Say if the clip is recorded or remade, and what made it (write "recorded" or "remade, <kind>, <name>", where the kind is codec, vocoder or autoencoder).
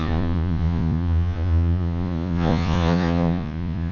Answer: remade, vocoder, Vocos